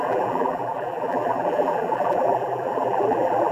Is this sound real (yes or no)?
no